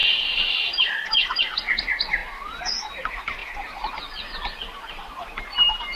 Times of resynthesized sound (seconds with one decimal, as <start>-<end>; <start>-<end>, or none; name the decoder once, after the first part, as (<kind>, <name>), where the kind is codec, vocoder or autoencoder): 0.0-1.4 (vocoder, BigVGAN v2)